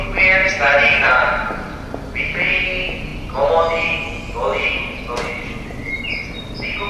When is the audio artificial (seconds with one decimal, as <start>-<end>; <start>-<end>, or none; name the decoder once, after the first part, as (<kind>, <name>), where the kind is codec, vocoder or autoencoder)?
0.4-1.5 (vocoder, BigVGAN v2)